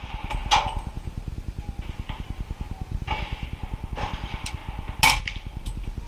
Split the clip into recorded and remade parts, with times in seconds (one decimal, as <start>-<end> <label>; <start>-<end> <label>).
0.0-6.1 recorded